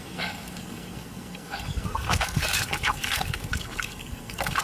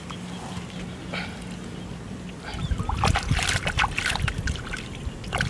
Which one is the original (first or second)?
second